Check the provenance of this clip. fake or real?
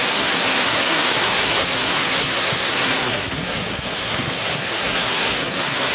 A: fake